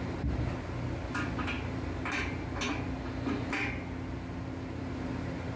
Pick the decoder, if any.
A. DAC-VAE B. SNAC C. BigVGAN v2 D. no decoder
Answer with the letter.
D